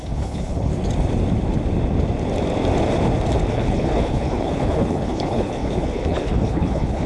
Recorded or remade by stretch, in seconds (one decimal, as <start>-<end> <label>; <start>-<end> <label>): 0.0-0.7 remade; 0.7-3.5 recorded; 3.5-7.1 remade